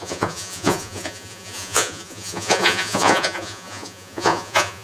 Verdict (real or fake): fake